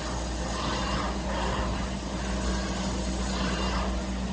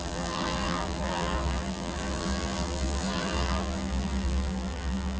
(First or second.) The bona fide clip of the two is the first